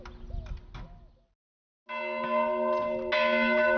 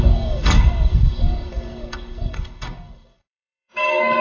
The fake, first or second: second